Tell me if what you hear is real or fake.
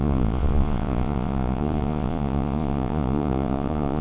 fake